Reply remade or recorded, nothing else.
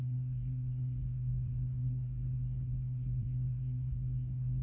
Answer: remade